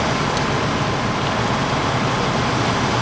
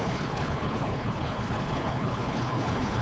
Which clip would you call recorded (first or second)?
first